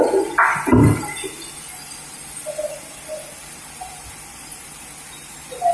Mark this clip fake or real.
real